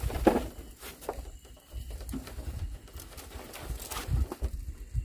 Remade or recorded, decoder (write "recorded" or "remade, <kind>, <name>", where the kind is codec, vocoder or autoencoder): recorded